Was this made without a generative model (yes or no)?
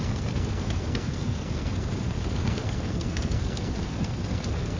no